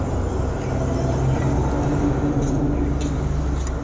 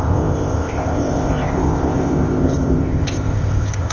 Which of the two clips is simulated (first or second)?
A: second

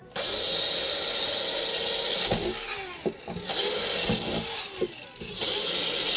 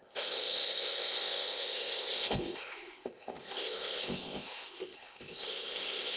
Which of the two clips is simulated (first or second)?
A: second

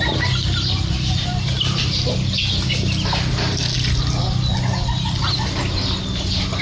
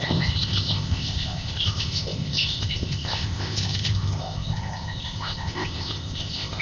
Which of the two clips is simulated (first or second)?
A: second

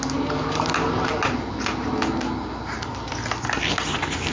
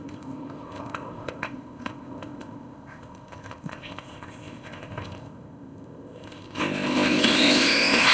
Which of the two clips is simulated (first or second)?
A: second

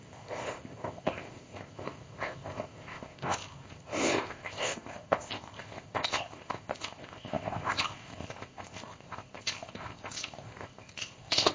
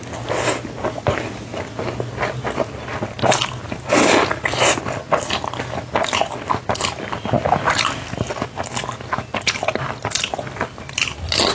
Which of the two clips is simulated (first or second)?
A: first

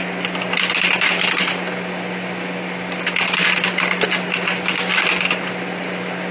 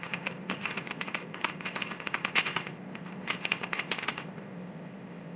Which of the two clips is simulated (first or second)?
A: second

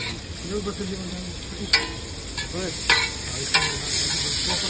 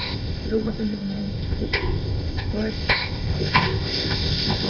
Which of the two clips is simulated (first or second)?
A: second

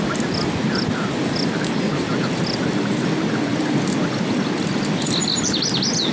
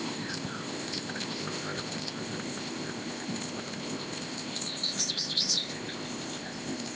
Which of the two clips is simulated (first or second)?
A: second